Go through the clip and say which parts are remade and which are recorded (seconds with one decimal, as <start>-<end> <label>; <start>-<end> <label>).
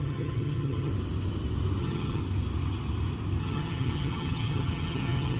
0.0-0.9 remade; 0.9-1.8 recorded; 1.8-2.2 remade; 2.2-3.4 recorded; 3.4-5.4 remade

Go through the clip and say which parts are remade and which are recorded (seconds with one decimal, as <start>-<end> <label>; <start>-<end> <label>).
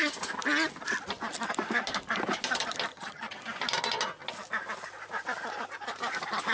0.0-2.9 recorded; 2.9-3.4 remade; 3.4-6.5 recorded